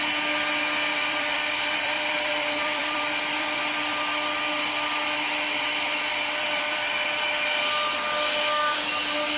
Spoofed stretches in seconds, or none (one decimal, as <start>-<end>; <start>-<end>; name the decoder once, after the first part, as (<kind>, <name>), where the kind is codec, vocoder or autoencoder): 0.9-3.6 (vocoder, BigVGAN v2); 6.1-6.9